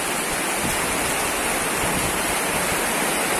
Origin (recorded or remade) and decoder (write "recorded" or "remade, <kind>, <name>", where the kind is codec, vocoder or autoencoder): recorded